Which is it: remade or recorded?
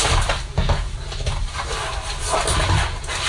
recorded